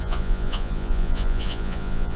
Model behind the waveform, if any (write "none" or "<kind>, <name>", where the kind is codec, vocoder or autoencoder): vocoder, Vocos